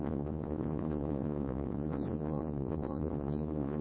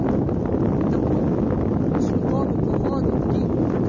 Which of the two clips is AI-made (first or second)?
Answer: first